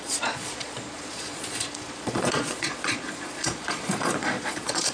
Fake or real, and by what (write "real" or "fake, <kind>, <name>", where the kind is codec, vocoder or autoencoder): fake, vocoder, Vocos